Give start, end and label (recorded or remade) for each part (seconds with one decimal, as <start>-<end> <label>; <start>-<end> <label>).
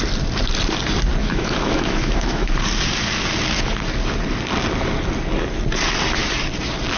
0.0-1.2 recorded; 1.2-2.5 remade; 2.5-7.0 recorded